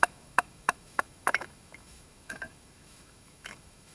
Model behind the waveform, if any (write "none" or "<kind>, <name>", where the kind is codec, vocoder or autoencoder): autoencoder, DAC-VAE